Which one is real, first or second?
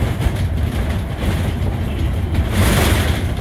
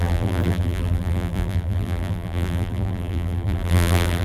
first